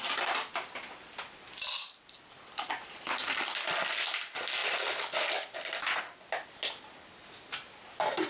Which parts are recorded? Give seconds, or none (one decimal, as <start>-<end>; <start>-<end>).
0.0-8.3